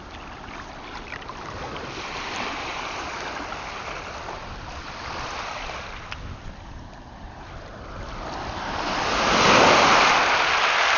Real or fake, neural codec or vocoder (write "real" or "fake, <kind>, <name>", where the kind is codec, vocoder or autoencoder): real